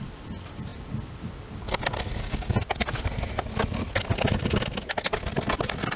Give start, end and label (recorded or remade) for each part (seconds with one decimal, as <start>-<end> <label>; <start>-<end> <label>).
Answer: 0.0-6.0 recorded